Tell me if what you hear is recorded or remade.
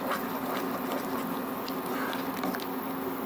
recorded